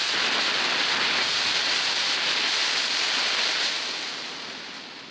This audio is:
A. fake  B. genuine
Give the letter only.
B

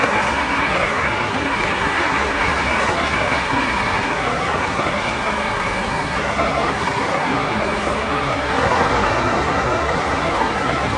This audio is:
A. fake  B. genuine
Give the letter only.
A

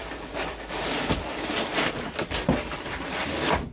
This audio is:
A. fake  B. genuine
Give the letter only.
A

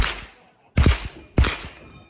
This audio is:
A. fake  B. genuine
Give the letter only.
B